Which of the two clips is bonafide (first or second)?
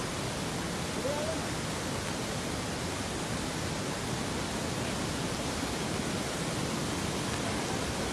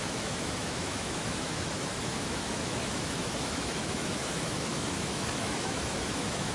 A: first